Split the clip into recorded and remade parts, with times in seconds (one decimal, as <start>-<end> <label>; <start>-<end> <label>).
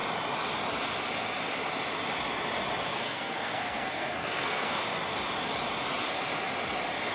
0.0-2.9 recorded; 2.9-4.8 remade; 4.8-7.1 recorded